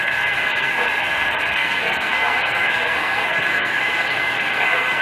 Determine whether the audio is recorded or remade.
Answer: remade